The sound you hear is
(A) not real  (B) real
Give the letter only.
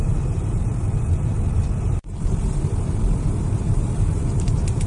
A